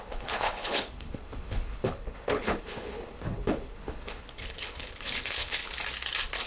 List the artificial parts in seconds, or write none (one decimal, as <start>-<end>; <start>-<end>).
0.0-5.6